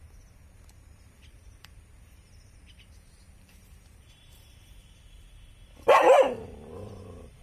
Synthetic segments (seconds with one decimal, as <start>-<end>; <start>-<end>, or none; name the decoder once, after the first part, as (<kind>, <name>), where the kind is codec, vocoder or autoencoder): 0.0-4.8 (vocoder, BigVGAN v2); 7.0-7.4